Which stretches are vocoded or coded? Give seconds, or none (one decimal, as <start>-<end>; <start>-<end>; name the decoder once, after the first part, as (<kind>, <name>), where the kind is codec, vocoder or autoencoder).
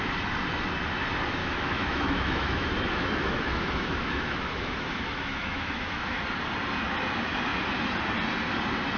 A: 1.4-6.2 (autoencoder, DAC-VAE)